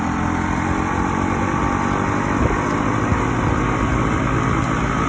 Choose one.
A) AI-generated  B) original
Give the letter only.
B